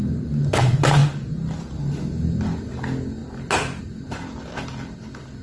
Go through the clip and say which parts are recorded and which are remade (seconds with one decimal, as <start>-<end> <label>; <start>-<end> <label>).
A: 0.0-5.4 recorded